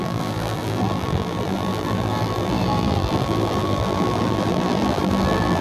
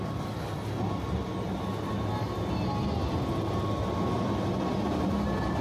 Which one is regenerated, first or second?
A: first